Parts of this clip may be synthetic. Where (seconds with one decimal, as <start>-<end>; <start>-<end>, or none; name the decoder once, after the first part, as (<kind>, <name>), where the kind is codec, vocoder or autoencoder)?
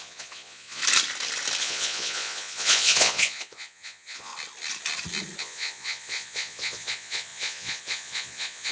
0.0-0.8 (vocoder, Vocos); 1.6-4.3; 5.4-8.7